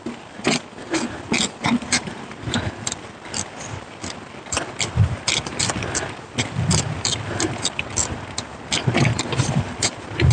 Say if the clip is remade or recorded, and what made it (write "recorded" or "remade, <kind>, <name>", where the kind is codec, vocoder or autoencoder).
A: remade, vocoder, BigVGAN v2